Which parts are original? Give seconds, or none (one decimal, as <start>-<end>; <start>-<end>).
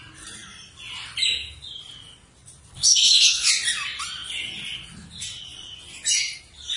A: 0.0-2.7; 3.5-6.8